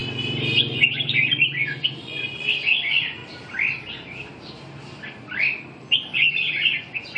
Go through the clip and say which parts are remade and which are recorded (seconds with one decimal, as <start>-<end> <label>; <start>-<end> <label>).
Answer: 0.0-0.5 recorded; 0.5-3.2 remade; 3.2-6.8 recorded; 6.8-7.2 remade